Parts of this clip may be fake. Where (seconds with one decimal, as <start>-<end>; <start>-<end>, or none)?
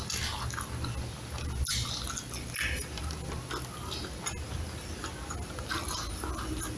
none